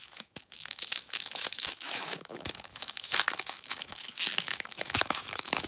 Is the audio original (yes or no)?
no